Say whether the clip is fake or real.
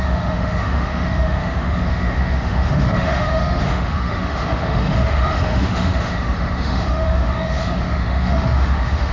fake